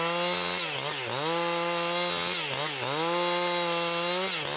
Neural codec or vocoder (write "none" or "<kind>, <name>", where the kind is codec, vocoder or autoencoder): none